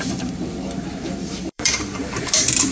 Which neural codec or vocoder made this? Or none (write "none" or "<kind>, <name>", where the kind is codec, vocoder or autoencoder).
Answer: vocoder, BigVGAN v2